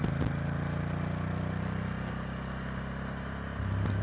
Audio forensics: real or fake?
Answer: real